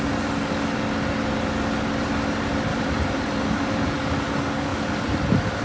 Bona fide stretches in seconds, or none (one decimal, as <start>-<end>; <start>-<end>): 0.0-2.7; 3.9-5.6